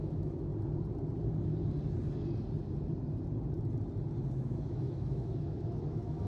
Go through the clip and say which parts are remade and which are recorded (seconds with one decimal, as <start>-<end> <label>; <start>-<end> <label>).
0.0-0.5 remade; 0.5-4.3 recorded; 4.3-6.3 remade